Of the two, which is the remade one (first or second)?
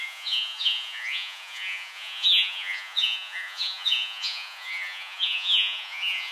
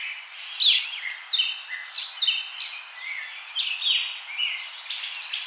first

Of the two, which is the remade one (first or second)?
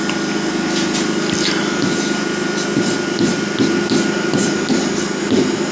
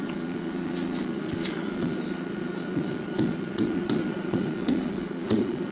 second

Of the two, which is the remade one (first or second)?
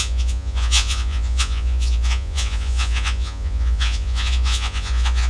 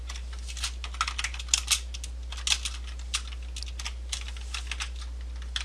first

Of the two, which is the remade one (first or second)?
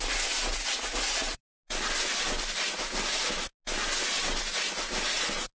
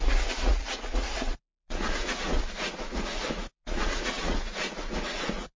second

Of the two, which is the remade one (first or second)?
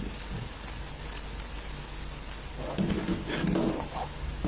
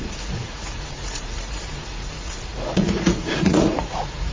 second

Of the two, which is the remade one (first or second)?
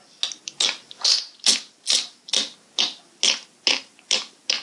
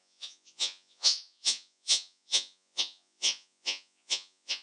second